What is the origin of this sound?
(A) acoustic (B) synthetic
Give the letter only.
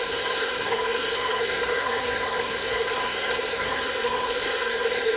B